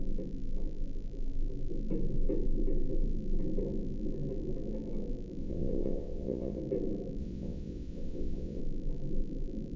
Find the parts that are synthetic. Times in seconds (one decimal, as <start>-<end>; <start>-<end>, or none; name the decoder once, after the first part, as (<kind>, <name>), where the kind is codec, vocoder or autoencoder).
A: 5.4-6.6 (vocoder, WaveNeXt); 7.2-8.6